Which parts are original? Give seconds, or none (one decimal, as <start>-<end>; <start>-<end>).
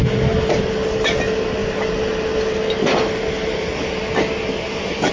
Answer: 0.0-5.1